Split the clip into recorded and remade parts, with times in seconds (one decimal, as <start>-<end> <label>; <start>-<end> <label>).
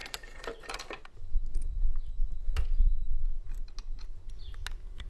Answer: 0.0-5.1 recorded